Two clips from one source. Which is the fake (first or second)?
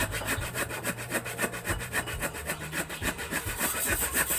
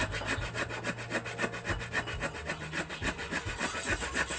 first